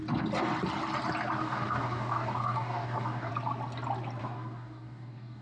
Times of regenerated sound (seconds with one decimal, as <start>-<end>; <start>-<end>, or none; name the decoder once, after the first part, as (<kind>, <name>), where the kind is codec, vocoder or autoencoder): 1.4-3.3 (codec, DAC); 4.2-5.4